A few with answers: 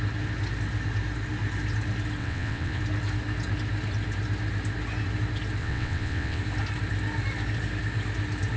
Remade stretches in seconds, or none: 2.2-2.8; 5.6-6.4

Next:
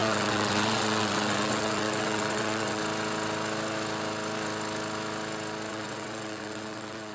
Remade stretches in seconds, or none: 0.0-2.8; 5.7-7.1

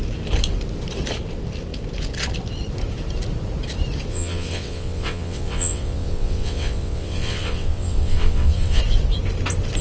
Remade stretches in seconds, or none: 4.1-8.8

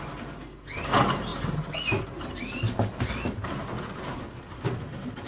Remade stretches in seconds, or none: none

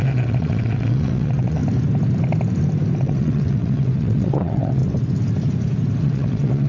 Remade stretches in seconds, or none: 0.0-1.6; 3.0-4.8; 6.0-6.7

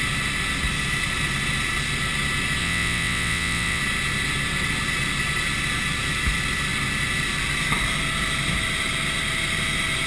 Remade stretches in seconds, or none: 2.6-3.8